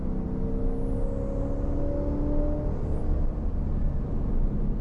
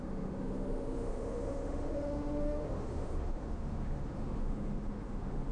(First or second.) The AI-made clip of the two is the second